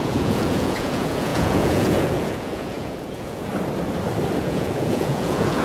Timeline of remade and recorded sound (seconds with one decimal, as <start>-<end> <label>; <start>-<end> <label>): 0.0-3.5 remade; 3.5-4.4 recorded; 4.4-5.6 remade